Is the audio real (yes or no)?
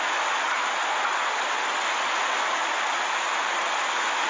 yes